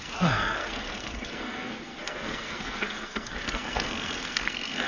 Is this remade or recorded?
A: remade